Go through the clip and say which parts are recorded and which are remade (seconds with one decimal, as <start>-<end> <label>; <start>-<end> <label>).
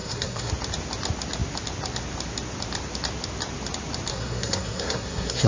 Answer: 0.0-0.5 remade; 0.5-4.1 recorded; 4.1-5.5 remade